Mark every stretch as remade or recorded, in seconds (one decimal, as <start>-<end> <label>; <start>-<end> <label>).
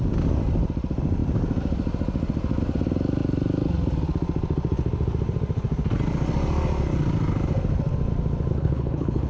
0.0-8.5 recorded; 8.5-9.3 remade